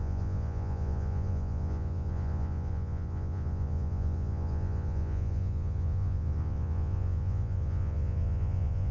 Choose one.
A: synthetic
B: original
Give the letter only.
A